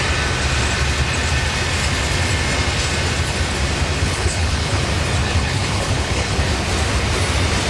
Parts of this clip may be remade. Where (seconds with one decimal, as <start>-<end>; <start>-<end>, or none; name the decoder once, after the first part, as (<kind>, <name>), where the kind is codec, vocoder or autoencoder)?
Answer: 4.0-4.8 (codec, HILCodec); 5.2-6.4